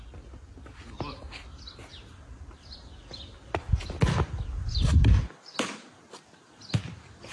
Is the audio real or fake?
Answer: real